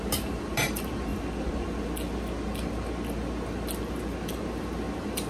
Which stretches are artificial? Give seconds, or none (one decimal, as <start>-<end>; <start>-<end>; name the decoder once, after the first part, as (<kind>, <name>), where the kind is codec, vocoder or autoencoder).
0.0-1.1 (vocoder, BigVGAN v2); 4.3-5.3